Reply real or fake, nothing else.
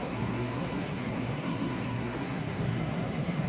fake